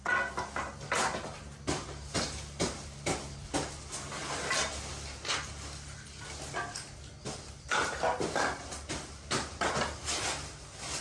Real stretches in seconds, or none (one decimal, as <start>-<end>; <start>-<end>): 0.0-11.0